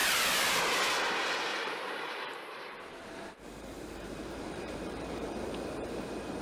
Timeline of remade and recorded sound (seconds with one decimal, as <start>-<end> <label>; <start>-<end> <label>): 0.0-0.6 remade; 0.6-1.5 recorded; 1.5-5.3 remade; 5.3-6.4 recorded

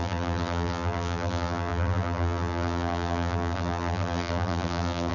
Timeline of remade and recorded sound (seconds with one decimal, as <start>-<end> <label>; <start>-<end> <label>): 0.0-5.1 remade

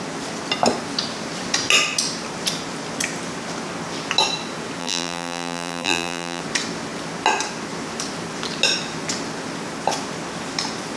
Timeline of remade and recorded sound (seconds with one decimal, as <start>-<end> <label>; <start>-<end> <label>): 0.0-4.8 recorded; 4.8-6.4 remade; 6.4-11.0 recorded